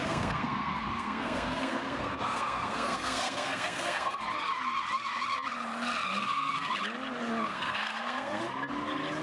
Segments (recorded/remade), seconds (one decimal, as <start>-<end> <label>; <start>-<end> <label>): 0.0-4.2 remade; 4.2-6.2 recorded; 6.2-6.7 remade; 6.7-7.5 recorded; 7.5-8.4 remade; 8.4-9.2 recorded